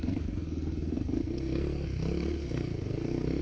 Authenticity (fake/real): fake